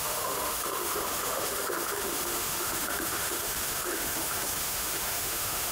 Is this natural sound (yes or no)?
no